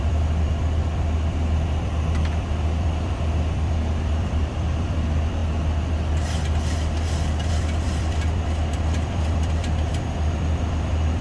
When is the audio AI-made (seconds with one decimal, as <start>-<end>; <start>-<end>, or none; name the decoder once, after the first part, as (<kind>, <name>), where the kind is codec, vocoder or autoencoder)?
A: 0.0-5.4 (vocoder, BigVGAN v2); 7.5-11.2